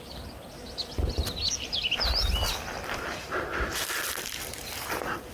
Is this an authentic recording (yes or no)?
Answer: yes